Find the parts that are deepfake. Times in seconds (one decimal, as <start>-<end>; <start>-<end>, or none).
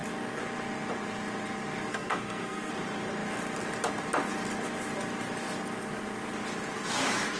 1.9-2.7